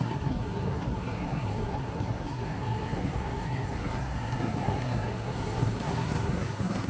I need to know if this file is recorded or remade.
remade